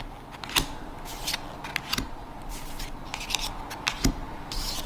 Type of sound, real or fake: real